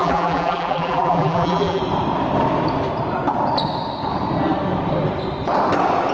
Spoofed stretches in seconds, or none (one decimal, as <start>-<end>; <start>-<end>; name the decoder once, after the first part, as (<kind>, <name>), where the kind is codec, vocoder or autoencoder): 0.0-1.8 (vocoder, BigVGAN v2)